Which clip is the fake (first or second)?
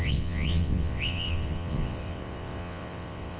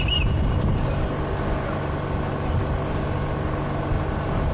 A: first